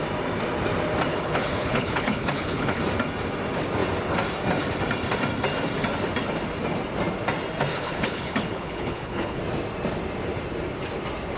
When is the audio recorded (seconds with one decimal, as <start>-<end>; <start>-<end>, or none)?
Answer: 0.0-1.1; 2.8-7.7; 9.4-11.4